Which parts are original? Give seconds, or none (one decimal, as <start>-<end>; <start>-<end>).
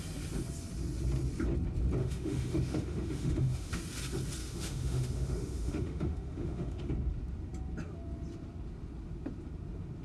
0.0-2.0; 3.8-4.4; 6.9-10.0